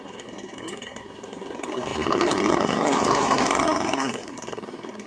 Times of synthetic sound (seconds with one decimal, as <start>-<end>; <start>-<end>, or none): 0.0-5.1